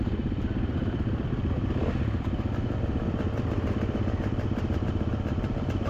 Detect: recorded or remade remade